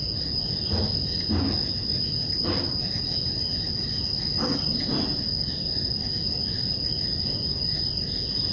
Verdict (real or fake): real